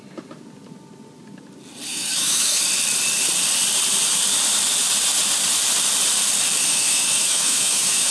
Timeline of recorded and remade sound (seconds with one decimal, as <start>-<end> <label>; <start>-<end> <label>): 0.0-1.9 recorded; 1.9-2.6 remade; 2.6-6.6 recorded; 6.6-8.1 remade